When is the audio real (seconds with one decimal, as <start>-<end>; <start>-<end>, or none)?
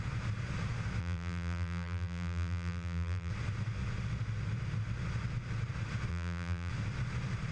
0.0-1.0; 3.3-6.1; 6.7-7.5